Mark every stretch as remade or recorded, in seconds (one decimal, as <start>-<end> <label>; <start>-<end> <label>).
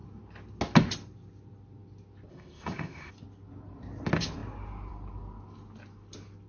0.0-2.3 recorded; 2.3-3.1 remade; 3.1-6.5 recorded